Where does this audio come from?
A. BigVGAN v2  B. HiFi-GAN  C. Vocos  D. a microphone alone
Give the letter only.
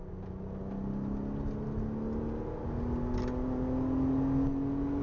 D